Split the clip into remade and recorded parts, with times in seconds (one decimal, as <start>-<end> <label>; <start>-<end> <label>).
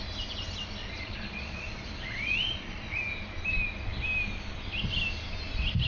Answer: 0.0-0.8 recorded; 0.8-3.0 remade; 3.0-5.9 recorded